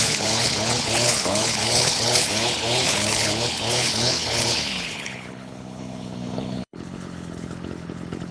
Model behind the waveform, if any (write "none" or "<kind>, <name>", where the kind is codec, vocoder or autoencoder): codec, HILCodec